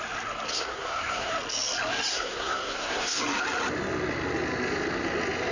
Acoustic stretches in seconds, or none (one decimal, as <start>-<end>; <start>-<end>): 0.0-0.5; 1.3-2.1; 3.2-5.5